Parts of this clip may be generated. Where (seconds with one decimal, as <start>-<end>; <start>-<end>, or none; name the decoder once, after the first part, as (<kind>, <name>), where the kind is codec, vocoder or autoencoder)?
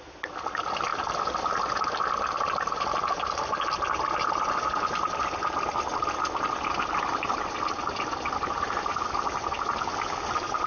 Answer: none